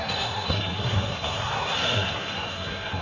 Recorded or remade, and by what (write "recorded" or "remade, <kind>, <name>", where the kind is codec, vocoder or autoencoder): remade, codec, SNAC